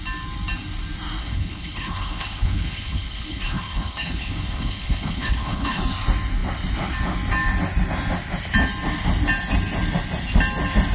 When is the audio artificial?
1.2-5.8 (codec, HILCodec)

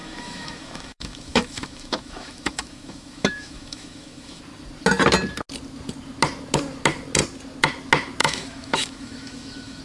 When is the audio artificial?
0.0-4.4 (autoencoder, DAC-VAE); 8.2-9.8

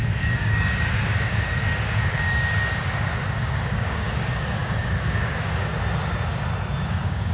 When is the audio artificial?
0.0-5.7 (codec, DAC); 6.8-7.3